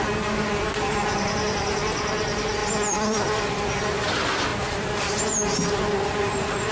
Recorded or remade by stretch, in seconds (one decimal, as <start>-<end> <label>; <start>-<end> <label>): 0.0-6.7 recorded